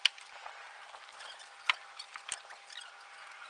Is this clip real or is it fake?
real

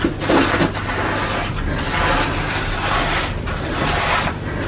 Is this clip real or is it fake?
real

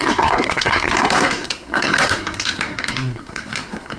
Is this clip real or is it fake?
fake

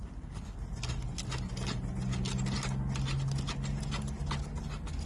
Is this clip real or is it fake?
real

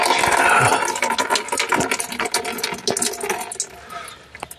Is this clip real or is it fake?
real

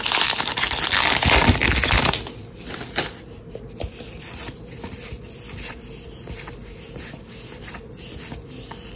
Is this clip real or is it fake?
real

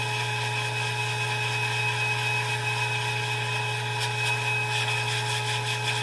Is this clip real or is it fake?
real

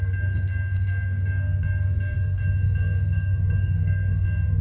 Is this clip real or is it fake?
fake